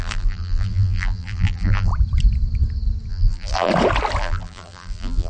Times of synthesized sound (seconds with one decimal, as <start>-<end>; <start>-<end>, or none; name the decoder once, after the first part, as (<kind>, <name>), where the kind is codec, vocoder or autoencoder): 0.0-1.9 (vocoder, BigVGAN v2); 3.1-3.7; 4.2-5.3